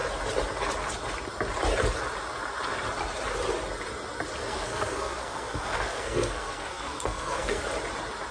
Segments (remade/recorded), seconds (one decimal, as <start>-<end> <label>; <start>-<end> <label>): 0.0-4.4 recorded; 4.4-7.6 remade; 7.6-8.3 recorded